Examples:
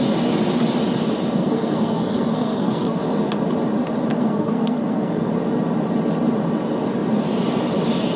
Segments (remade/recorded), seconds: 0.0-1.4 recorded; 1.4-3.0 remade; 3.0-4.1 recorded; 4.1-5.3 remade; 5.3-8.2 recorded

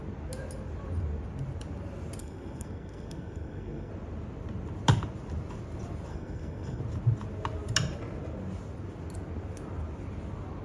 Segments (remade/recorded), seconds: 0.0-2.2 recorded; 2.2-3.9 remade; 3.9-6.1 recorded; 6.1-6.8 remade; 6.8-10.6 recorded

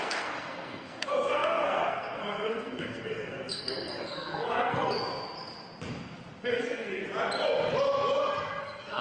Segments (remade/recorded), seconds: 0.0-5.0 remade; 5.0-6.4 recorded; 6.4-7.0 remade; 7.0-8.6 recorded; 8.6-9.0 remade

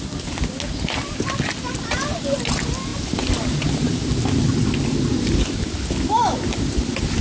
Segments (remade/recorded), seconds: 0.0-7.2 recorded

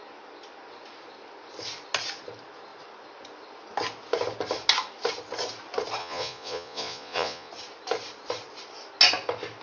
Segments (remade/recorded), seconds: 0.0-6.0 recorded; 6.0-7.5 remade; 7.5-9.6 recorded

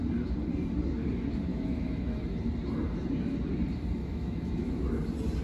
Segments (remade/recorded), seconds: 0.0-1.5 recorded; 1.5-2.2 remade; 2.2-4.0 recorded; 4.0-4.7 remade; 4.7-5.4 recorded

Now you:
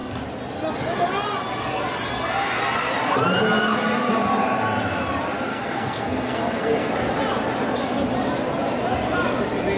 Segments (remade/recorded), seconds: 0.0-5.5 recorded; 5.5-6.9 remade; 6.9-9.8 recorded